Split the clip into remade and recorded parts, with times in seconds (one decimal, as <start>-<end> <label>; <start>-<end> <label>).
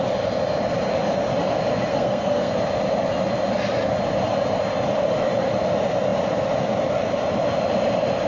0.0-1.9 recorded; 1.9-2.5 remade; 2.5-8.3 recorded